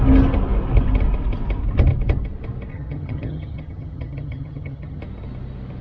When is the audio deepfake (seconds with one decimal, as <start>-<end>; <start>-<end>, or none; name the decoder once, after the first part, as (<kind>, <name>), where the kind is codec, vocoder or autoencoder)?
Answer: 2.7-5.0 (vocoder, HiFi-GAN)